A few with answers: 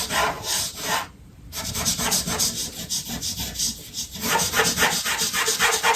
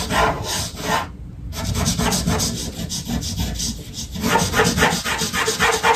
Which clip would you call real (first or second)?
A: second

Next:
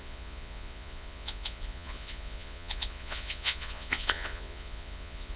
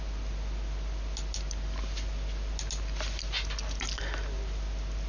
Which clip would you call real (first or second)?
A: second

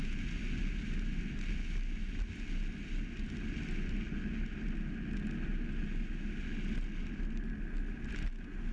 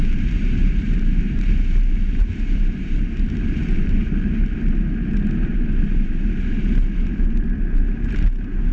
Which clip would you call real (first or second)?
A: first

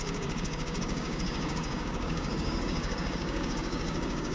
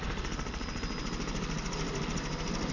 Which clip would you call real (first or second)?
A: second